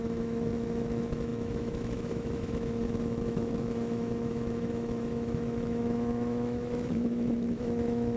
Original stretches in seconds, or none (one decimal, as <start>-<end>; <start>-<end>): none